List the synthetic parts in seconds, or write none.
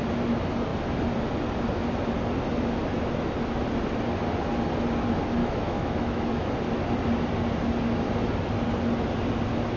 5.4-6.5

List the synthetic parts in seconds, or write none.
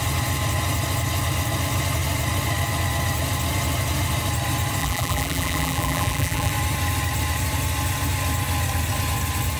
4.8-6.5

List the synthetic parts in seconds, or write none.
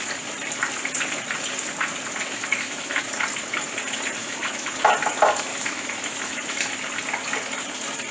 2.2-3.0; 4.2-4.7; 5.5-6.7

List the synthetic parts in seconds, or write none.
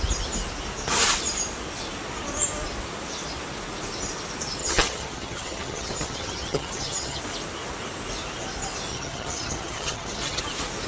4.6-7.2; 8.9-10.4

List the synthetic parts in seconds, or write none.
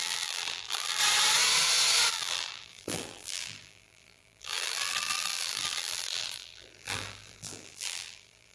0.0-1.0; 2.1-8.5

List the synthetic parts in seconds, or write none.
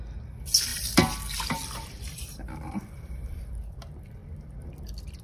0.7-3.8; 4.2-4.7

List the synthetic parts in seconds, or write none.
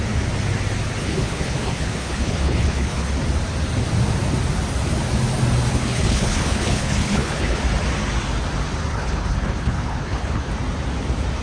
1.0-3.1; 5.7-7.6; 8.9-10.5